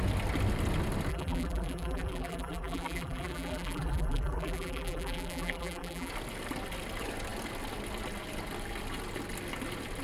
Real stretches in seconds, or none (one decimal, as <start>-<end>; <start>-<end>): 0.0-1.1; 6.1-10.0